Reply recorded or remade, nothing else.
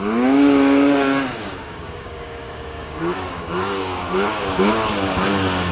remade